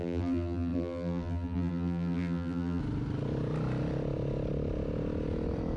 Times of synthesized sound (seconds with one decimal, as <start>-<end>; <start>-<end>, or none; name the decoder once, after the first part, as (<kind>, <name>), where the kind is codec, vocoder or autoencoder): 0.0-2.8 (vocoder, BigVGAN v2)